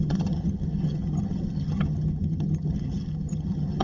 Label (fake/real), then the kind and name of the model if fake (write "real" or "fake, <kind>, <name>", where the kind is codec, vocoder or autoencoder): fake, vocoder, HiFi-GAN